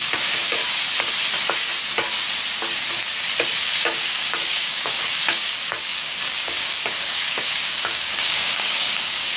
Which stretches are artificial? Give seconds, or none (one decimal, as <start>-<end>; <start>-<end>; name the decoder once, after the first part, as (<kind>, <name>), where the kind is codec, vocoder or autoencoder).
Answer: 0.0-0.6 (codec, DAC); 3.6-9.4